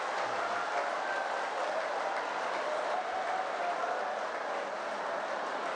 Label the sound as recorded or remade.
recorded